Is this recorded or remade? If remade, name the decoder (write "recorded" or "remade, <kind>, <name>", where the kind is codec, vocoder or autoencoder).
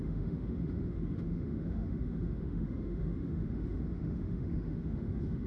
remade, autoencoder, DAC-VAE